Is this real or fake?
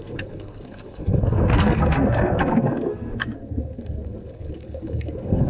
fake